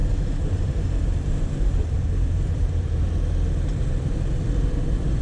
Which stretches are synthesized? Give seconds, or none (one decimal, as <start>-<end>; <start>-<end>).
0.0-3.1; 3.8-5.2

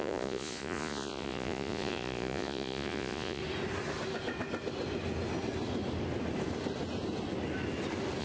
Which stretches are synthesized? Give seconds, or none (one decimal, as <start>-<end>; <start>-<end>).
0.0-3.4

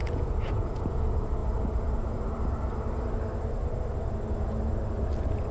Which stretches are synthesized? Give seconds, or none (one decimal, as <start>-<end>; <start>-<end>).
0.0-0.8

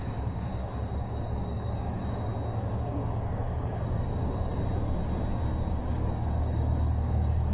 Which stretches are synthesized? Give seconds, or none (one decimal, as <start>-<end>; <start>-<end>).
0.0-2.3; 2.9-4.5; 5.7-7.5

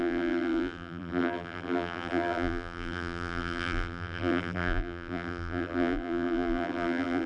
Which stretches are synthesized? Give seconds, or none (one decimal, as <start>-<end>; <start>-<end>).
0.0-7.3